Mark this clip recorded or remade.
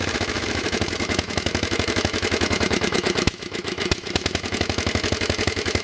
remade